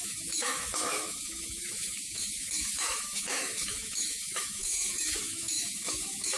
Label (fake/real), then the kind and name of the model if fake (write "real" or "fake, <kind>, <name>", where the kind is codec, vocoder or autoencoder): fake, autoencoder, DAC-VAE